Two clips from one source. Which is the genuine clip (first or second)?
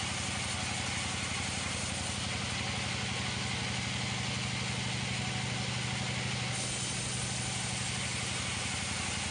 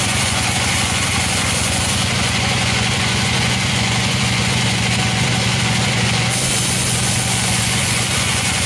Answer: first